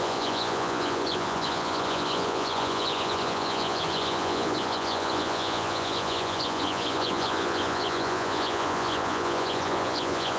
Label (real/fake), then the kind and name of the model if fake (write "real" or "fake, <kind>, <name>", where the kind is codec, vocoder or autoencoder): fake, vocoder, Vocos